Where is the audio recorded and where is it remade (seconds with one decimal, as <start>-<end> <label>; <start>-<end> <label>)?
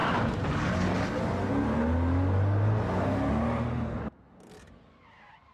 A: 0.0-5.5 recorded